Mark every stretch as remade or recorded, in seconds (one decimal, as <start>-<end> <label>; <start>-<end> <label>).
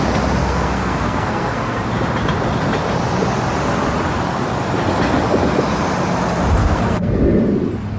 0.0-0.4 recorded; 0.4-1.9 remade; 1.9-6.6 recorded; 6.6-7.2 remade; 7.2-8.0 recorded